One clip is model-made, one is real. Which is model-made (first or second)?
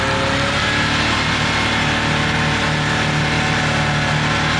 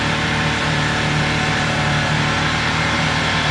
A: second